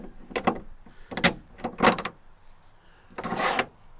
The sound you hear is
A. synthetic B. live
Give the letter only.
B